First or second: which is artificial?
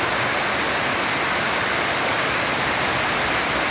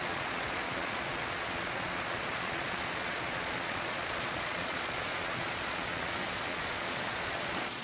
second